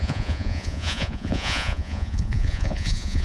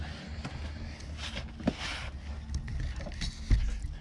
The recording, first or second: second